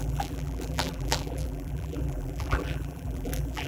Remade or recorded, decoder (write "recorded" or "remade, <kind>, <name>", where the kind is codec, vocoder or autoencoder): remade, vocoder, BigVGAN v2